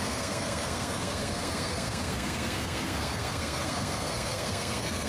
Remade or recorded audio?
remade